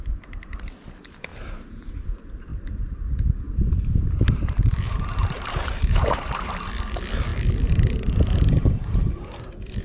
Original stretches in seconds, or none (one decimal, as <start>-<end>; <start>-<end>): 0.0-1.3; 1.9-2.5; 6.5-9.8